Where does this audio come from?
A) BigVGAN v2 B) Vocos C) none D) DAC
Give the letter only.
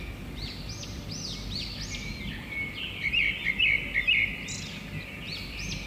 C